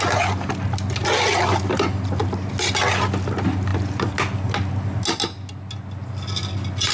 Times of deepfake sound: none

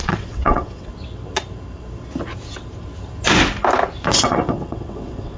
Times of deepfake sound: 0.0-0.9 (vocoder, WaveNeXt); 4.1-5.4

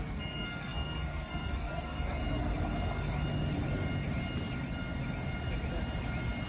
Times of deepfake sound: 0.0-2.5 (codec, SNAC)

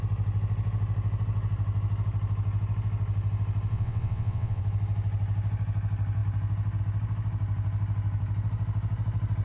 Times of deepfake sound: 3.7-4.6 (vocoder, WaveNeXt)

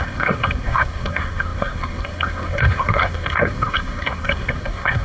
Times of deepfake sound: 0.0-5.0 (codec, SNAC)

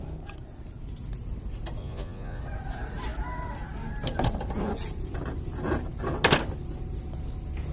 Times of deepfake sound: 1.8-2.4 (vocoder, Vocos)